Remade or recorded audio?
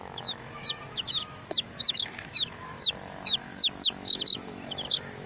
remade